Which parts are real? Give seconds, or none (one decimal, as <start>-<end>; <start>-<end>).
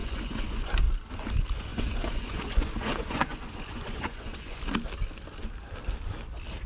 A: 0.7-1.7; 4.6-6.7